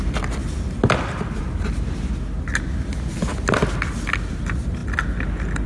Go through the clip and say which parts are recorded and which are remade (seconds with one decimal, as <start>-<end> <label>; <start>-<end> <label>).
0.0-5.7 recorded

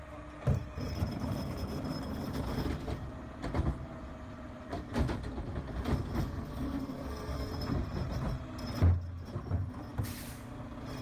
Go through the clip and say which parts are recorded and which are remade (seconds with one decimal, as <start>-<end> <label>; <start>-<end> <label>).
0.0-6.2 recorded; 6.2-7.5 remade; 7.5-11.0 recorded

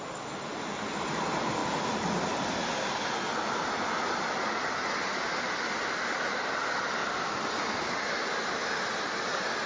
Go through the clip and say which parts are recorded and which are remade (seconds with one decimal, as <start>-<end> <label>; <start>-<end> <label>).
0.0-9.7 recorded

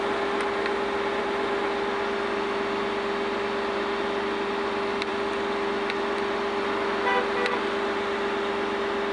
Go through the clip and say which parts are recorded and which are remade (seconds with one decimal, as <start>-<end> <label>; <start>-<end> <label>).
0.0-9.1 recorded

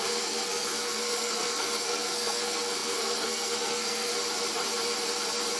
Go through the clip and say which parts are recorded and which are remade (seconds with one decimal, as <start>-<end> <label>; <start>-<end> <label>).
0.0-4.1 remade; 4.1-5.6 recorded